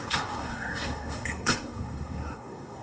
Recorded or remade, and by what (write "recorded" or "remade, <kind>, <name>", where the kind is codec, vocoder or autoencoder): remade, codec, SNAC